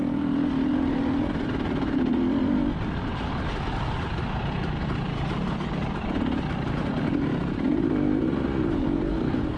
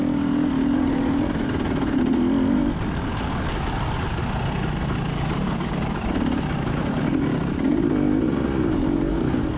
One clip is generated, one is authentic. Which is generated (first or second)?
first